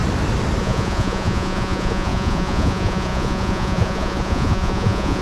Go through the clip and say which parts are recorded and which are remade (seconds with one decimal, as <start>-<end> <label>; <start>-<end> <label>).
0.0-0.6 recorded; 0.6-5.2 remade